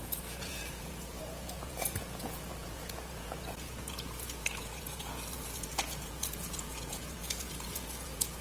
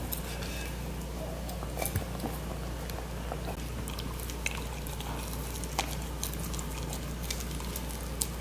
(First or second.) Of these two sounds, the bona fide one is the second